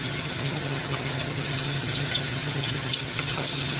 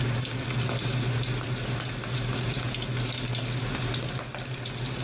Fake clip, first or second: first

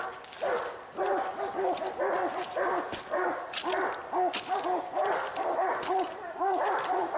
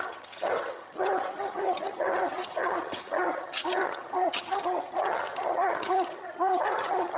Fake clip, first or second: second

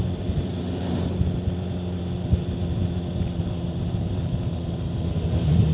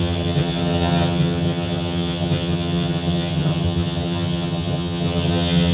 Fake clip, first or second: second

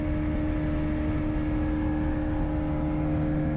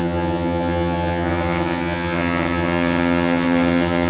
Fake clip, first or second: second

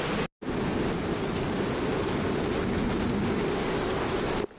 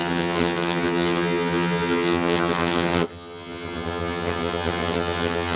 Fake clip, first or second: second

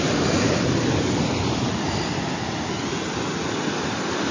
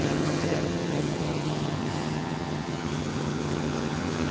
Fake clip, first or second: second